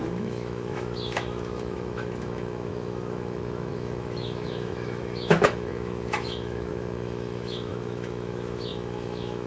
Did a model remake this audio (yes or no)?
yes